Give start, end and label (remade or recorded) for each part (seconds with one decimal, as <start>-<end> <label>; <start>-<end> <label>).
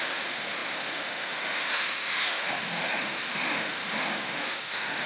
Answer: 0.0-5.1 remade